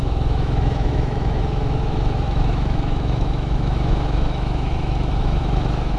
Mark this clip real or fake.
fake